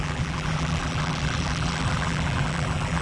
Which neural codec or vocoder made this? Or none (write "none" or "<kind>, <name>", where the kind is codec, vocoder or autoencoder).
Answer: vocoder, BigVGAN v2